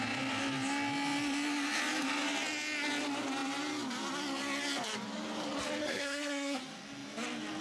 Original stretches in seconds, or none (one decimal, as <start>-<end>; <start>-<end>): 0.0-5.8; 6.6-7.6